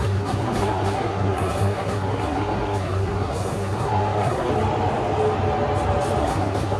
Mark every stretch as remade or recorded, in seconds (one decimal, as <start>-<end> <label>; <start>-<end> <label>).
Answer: 0.0-4.5 remade; 4.5-6.2 recorded; 6.2-6.8 remade